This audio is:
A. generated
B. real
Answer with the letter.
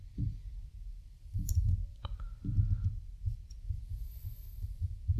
B